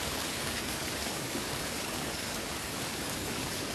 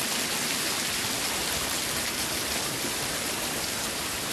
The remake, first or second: first